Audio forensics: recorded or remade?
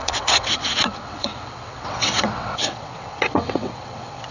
remade